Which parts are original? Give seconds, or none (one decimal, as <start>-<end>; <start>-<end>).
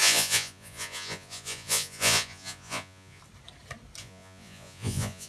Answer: 3.2-4.0